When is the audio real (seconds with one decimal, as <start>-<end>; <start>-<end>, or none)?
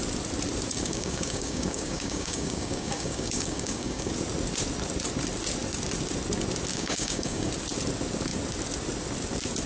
0.0-0.7; 4.1-6.7; 7.5-9.7